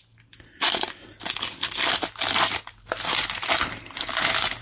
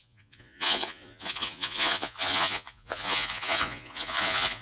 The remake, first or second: second